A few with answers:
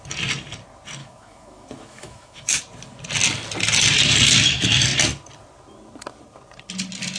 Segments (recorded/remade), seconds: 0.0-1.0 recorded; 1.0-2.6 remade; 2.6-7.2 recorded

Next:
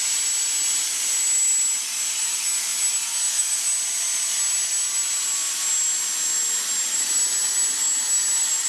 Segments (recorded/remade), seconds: 0.0-8.7 recorded

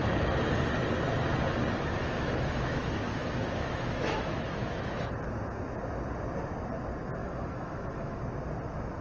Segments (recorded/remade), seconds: 0.0-2.0 recorded; 2.0-5.1 remade; 5.1-7.2 recorded; 7.2-8.2 remade; 8.2-9.0 recorded

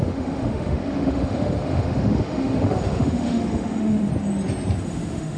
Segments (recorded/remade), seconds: 0.0-4.1 remade; 4.1-4.8 recorded; 4.8-5.4 remade

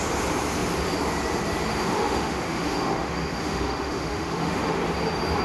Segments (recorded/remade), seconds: 0.0-1.8 recorded; 1.8-4.8 remade; 4.8-5.4 recorded